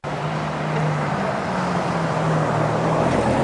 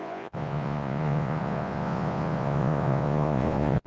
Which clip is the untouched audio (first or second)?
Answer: first